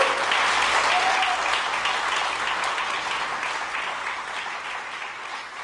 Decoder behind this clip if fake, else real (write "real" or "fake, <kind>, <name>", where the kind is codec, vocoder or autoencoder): real